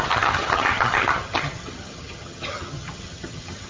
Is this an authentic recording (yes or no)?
no